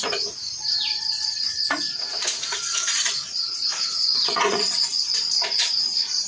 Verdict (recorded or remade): remade